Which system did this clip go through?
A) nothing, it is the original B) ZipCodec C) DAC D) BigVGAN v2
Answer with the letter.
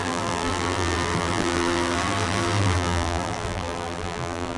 D